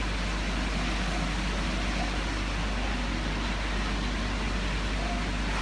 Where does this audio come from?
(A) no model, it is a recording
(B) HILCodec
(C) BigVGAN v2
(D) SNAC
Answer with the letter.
A